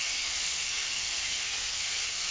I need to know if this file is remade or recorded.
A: remade